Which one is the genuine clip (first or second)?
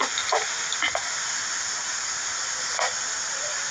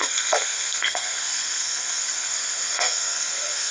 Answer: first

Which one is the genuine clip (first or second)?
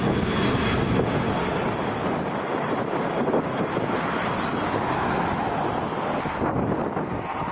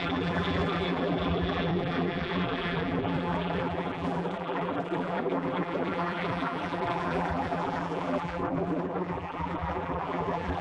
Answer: first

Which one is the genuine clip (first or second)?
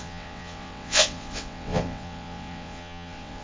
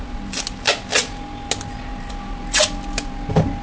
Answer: second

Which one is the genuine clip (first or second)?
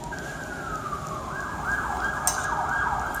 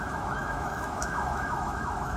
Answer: first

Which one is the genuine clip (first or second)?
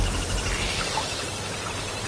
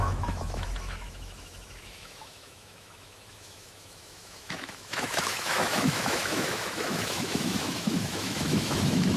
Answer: first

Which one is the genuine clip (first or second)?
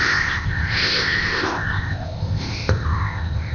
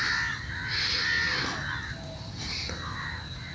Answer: second